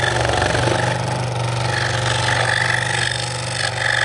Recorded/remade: recorded